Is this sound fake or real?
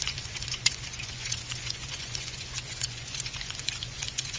fake